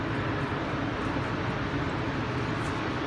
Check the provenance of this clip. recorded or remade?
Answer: recorded